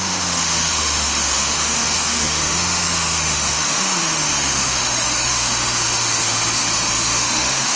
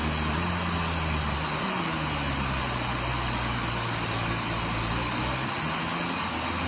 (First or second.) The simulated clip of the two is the first